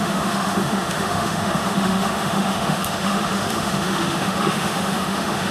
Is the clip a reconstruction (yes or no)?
yes